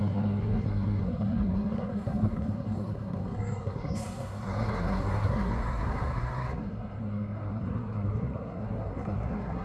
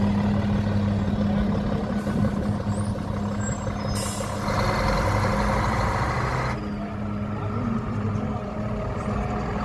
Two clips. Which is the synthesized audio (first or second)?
first